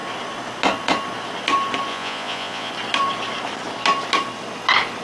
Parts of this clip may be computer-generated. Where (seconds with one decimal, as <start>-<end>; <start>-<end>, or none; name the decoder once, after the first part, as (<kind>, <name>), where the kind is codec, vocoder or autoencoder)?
1.9-2.7 (vocoder, Vocos)